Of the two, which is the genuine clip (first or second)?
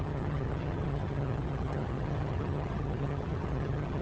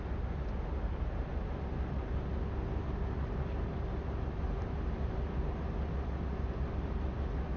second